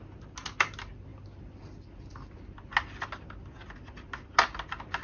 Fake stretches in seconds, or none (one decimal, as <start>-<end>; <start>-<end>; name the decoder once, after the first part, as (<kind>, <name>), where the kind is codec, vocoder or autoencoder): none